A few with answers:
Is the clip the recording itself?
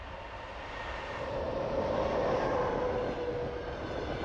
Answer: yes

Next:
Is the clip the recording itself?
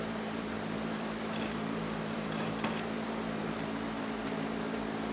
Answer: no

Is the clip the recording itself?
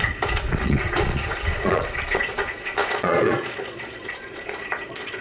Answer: no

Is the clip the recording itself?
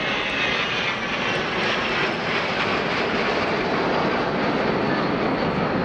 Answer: yes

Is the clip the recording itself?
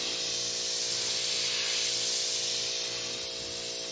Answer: yes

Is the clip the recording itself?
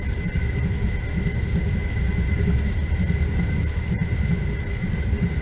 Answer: yes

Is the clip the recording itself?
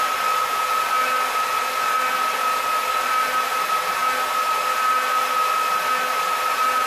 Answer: no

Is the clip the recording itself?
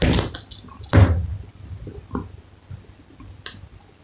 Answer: yes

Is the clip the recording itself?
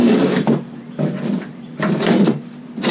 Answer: no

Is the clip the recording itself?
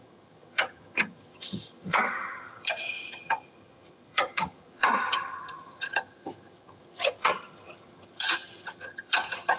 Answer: no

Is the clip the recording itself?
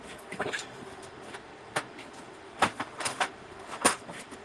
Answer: no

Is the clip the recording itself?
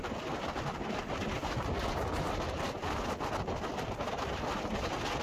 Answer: yes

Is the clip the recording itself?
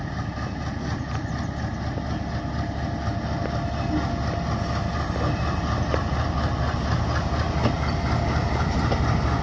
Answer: yes